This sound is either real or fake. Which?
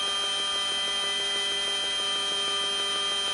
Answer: real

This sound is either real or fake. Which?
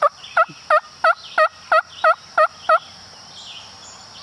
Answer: real